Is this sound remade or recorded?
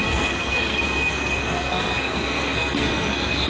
remade